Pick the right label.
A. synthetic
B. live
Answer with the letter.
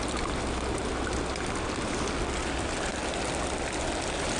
B